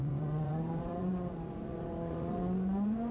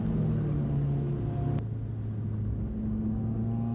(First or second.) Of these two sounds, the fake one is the first